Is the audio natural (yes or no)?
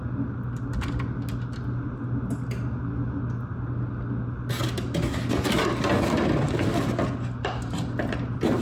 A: yes